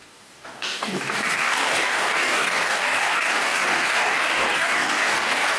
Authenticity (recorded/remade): remade